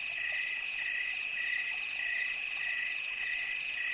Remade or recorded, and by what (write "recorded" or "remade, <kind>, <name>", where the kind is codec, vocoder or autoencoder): remade, vocoder, Vocos